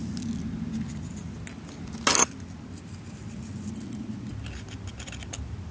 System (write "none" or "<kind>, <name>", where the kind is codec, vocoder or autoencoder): none